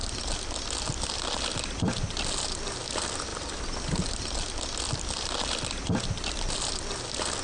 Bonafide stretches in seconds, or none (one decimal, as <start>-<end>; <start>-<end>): 0.0-7.4